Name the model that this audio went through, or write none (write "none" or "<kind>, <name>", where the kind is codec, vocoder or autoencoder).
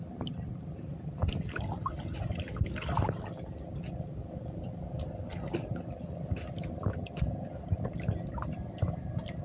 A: none